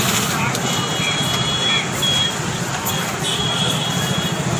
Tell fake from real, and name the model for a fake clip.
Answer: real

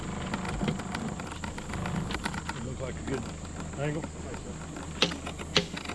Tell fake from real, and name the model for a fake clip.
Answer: real